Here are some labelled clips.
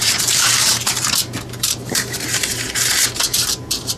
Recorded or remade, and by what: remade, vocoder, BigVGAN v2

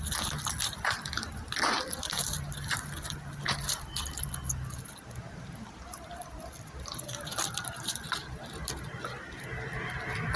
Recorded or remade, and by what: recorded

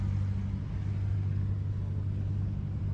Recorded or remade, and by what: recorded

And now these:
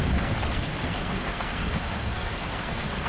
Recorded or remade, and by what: remade, codec, SNAC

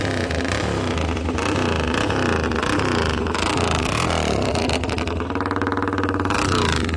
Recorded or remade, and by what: recorded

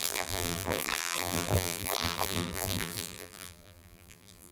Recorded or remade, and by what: remade, vocoder, BigVGAN v2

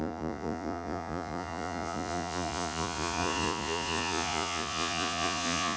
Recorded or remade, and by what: remade, vocoder, Vocos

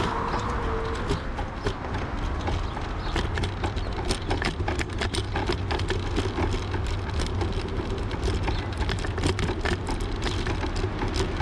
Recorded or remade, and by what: recorded